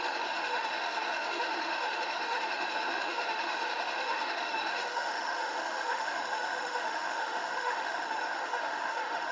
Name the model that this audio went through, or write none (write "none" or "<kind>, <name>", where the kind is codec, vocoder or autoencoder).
autoencoder, DAC-VAE